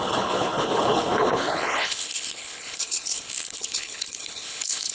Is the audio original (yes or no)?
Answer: no